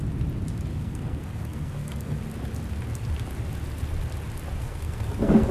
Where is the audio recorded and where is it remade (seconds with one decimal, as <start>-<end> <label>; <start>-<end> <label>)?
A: 0.0-0.7 recorded; 0.7-2.2 remade; 2.2-4.6 recorded; 4.6-5.5 remade